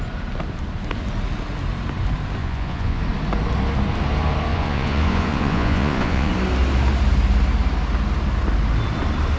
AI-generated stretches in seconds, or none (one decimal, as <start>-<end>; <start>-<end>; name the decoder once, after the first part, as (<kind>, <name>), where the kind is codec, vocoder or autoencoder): 2.4-3.0 (vocoder, Vocos); 4.5-6.3